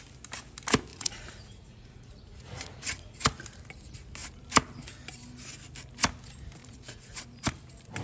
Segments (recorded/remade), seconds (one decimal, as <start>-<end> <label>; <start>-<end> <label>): 0.0-0.9 recorded; 0.9-3.2 remade; 3.2-6.6 recorded; 6.6-7.2 remade; 7.2-8.0 recorded

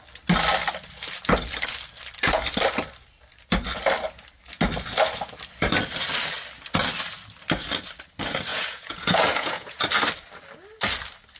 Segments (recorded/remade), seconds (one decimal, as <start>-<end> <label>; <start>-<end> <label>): 0.0-8.5 recorded; 8.5-9.8 remade; 9.8-11.4 recorded

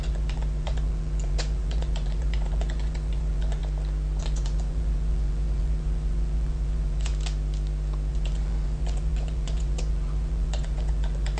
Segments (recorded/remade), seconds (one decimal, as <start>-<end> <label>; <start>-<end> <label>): 0.0-3.6 remade; 3.6-4.2 recorded; 4.2-7.1 remade; 7.1-8.1 recorded; 8.1-11.4 remade

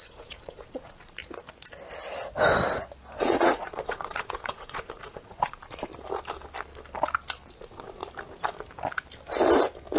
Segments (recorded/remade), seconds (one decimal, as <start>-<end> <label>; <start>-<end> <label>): 0.0-1.2 remade; 1.2-3.2 recorded; 3.2-5.9 remade; 5.9-7.5 recorded; 7.5-8.0 remade; 8.0-10.0 recorded

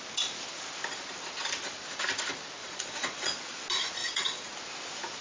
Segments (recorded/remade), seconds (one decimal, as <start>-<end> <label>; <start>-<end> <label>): 0.0-2.6 recorded; 2.6-3.4 remade; 3.4-4.0 recorded; 4.0-4.5 remade; 4.5-5.2 recorded